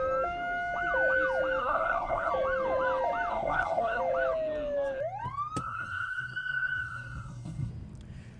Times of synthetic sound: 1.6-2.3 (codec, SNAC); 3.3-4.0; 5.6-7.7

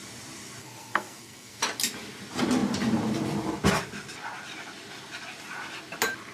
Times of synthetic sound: 0.6-1.6 (codec, SNAC)

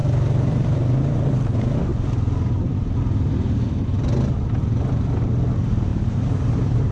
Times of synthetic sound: 0.0-0.8 (vocoder, BigVGAN v2); 5.9-6.9

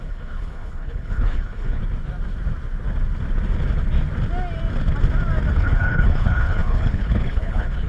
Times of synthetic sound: 0.0-1.8 (codec, HILCodec); 5.5-7.9

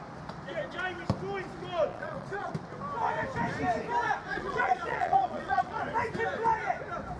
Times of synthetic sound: 1.9-2.5 (vocoder, Vocos); 4.3-5.8

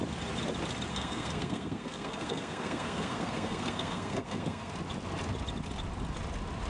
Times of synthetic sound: 0.9-4.7 (codec, SNAC)

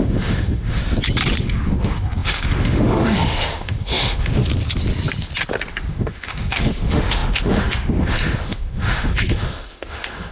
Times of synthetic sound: 0.0-0.8 (autoencoder, DAC-VAE); 1.4-4.5; 5.9-10.3

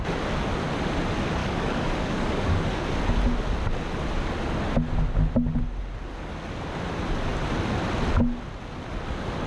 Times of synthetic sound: 1.4-2.8 (codec, DAC)